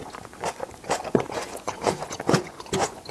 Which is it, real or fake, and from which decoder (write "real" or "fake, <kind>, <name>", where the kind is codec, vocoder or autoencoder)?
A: fake, vocoder, Vocos